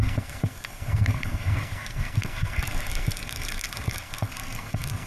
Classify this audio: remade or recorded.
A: remade